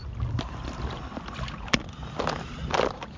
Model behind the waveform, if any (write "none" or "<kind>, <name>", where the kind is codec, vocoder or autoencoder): none